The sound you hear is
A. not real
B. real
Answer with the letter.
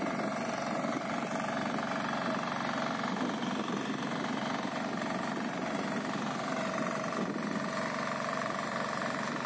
A